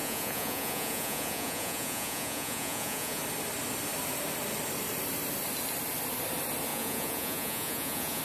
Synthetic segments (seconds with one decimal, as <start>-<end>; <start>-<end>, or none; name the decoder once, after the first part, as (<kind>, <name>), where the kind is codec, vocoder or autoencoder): 0.0-3.2 (vocoder, Vocos); 6.7-8.2